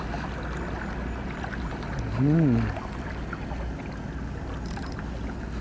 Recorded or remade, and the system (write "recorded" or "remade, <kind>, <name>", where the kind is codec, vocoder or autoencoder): recorded